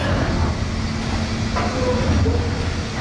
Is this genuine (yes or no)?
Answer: yes